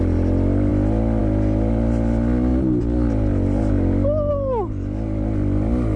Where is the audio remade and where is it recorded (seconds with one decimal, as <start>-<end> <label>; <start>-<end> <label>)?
0.0-6.0 recorded